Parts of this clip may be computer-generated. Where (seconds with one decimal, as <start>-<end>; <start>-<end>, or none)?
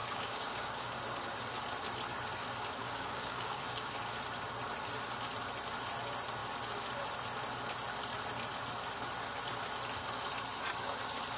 0.0-0.9; 2.8-3.9